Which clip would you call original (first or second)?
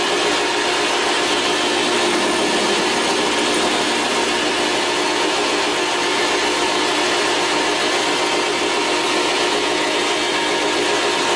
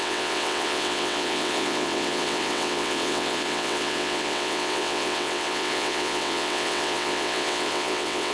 first